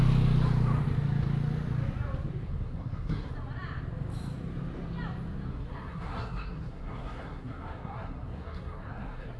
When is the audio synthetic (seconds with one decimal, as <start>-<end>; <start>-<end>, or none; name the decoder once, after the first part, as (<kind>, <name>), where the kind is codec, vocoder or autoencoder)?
2.4-3.3 (codec, SNAC); 5.5-9.4